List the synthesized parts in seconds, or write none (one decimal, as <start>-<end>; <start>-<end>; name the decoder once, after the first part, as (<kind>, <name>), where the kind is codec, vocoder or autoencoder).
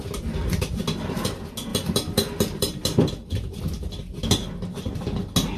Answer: 1.7-3.6 (vocoder, BigVGAN v2)